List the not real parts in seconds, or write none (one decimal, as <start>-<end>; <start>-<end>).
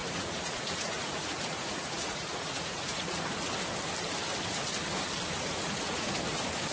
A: 0.0-3.2; 5.3-6.1